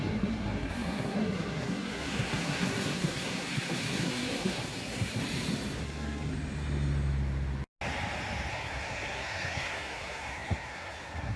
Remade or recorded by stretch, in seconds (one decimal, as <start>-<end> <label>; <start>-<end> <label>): 0.0-5.2 remade; 5.2-5.8 recorded; 5.8-6.3 remade; 6.3-8.5 recorded; 8.5-11.4 remade